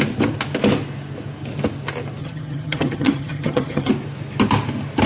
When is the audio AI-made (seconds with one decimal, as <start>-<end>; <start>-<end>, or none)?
2.2-3.9